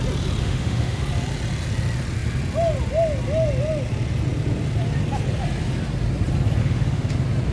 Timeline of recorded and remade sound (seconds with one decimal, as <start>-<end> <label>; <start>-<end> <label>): 0.0-0.4 recorded; 0.4-1.0 remade; 1.0-6.6 recorded; 6.6-7.1 remade; 7.1-7.5 recorded